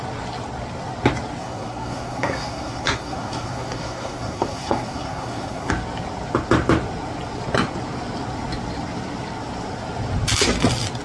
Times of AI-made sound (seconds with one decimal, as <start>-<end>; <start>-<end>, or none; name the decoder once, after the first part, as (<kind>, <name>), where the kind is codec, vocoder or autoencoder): 1.4-5.7 (codec, SNAC)